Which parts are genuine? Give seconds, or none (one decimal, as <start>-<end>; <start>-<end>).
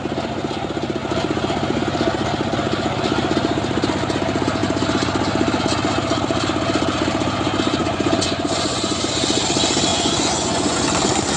0.0-7.8; 9.0-9.9; 10.8-11.4